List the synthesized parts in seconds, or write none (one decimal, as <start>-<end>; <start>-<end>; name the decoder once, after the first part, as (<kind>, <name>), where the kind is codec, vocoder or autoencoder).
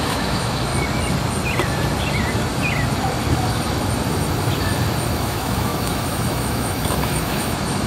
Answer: 0.0-0.7 (autoencoder, DAC-VAE); 5.1-7.9